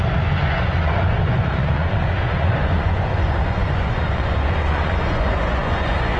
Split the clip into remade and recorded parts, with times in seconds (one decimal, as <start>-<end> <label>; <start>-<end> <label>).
0.0-6.2 remade